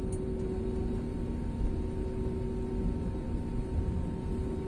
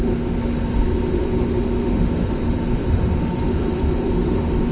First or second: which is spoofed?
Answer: second